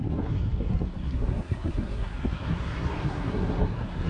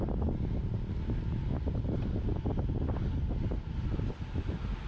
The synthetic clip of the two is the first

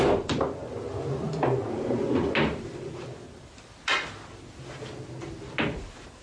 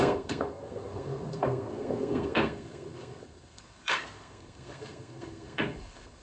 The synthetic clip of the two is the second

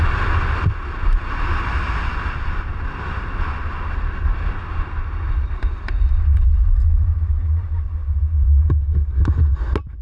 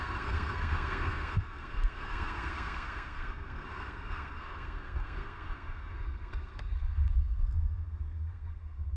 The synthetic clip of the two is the second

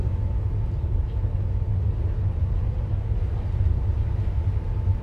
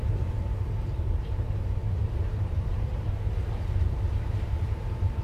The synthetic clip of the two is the second